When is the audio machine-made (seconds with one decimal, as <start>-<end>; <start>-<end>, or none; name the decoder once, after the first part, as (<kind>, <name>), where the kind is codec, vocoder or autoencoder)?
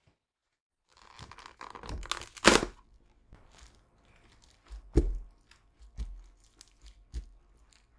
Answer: none